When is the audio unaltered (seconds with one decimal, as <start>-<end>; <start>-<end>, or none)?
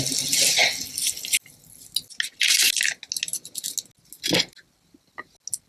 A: 0.0-5.7